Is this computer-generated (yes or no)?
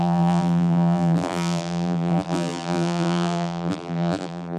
yes